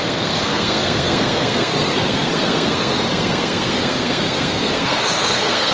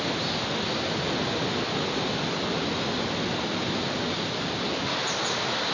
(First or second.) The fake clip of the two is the first